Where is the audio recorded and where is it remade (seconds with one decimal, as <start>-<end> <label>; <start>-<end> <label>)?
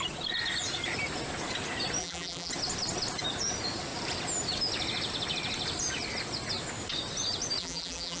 0.0-2.0 recorded; 2.0-2.5 remade; 2.5-7.6 recorded; 7.6-8.2 remade